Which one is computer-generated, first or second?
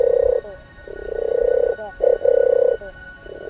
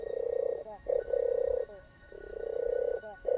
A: second